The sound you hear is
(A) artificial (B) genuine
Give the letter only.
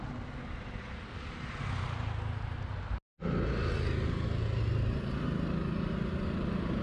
B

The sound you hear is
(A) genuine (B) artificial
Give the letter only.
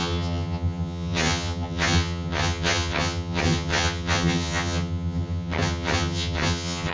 B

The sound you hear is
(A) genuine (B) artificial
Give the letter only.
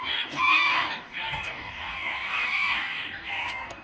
B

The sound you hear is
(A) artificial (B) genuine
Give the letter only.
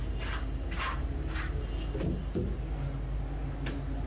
B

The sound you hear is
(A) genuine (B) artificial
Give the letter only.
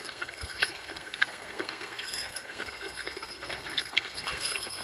B